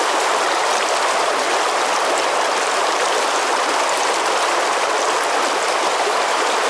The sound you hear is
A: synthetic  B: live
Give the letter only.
B